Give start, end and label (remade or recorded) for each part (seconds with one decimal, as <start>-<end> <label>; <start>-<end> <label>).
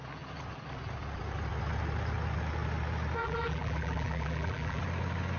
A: 0.0-3.2 recorded; 3.2-4.8 remade; 4.8-5.4 recorded